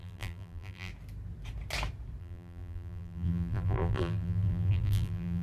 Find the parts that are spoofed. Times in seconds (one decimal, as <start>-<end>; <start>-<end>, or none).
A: 0.0-0.9; 2.2-5.4